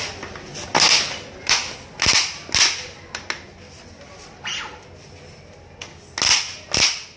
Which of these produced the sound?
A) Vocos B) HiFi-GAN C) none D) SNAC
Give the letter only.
C